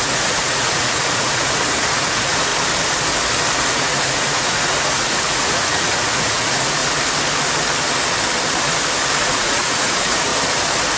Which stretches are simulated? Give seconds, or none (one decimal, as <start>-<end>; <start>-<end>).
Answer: 0.0-2.5; 3.7-6.8; 9.2-10.3